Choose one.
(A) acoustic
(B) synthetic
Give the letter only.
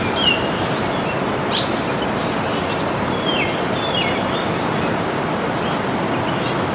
A